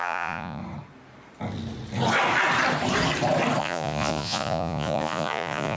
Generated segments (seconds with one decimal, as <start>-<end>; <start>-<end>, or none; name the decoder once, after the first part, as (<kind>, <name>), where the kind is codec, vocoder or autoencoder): 0.0-0.6 (vocoder, Vocos); 3.6-5.8

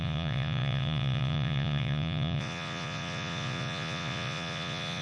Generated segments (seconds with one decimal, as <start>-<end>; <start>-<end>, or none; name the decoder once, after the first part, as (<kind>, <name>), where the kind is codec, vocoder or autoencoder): 0.0-5.0 (vocoder, Vocos)

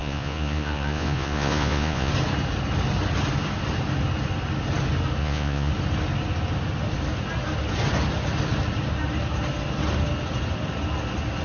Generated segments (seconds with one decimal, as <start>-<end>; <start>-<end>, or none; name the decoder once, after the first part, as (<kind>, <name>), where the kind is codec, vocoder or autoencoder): 0.0-2.1 (vocoder, Vocos); 5.2-5.7